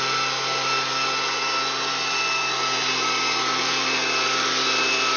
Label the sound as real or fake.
real